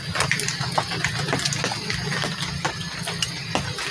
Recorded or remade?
recorded